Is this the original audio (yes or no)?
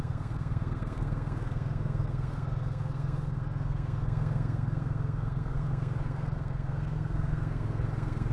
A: no